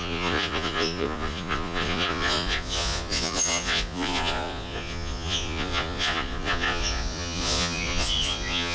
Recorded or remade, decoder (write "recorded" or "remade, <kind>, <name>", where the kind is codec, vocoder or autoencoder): remade, vocoder, Vocos